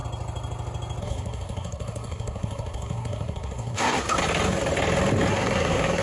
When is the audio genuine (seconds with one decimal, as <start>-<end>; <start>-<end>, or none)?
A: 0.0-1.0; 4.2-5.3